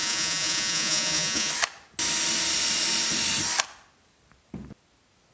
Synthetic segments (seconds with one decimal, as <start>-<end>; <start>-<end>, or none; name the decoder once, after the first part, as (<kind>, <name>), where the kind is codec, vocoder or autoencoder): 0.0-1.5 (vocoder, Vocos)